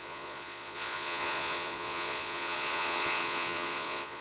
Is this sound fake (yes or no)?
yes